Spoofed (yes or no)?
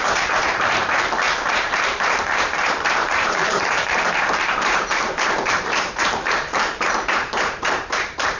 yes